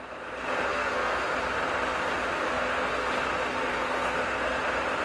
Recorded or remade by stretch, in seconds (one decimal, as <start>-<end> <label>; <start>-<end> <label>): 0.0-0.7 recorded; 0.7-1.3 remade; 1.3-2.3 recorded; 2.3-3.1 remade; 3.1-3.5 recorded; 3.5-4.6 remade; 4.6-5.0 recorded